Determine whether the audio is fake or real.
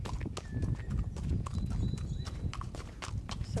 real